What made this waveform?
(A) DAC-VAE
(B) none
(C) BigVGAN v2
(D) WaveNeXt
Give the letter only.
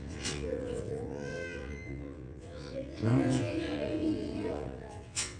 D